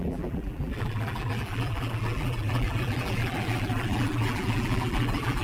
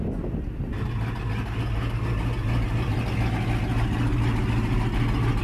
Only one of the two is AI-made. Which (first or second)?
first